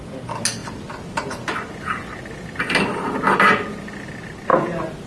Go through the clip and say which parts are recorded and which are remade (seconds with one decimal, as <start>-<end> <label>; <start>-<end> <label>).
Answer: 0.0-5.1 recorded

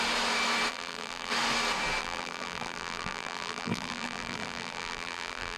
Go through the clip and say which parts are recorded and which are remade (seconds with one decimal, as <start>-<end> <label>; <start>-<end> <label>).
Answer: 0.0-0.7 recorded; 0.7-1.3 remade; 1.3-2.0 recorded; 2.0-5.6 remade

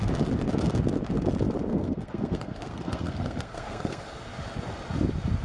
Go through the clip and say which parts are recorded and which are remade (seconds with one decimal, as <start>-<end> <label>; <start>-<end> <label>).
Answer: 0.0-1.7 recorded; 1.7-4.0 remade; 4.0-5.4 recorded

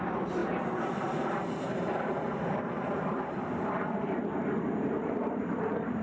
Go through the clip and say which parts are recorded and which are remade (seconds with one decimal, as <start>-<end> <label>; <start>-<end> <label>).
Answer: 0.0-4.2 remade; 4.2-5.0 recorded; 5.0-6.0 remade

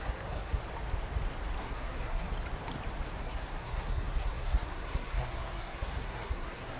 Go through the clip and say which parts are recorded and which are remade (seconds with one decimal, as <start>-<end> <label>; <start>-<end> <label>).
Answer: 0.0-0.6 remade; 0.6-1.6 recorded; 1.6-2.3 remade; 2.3-3.2 recorded; 3.2-6.8 remade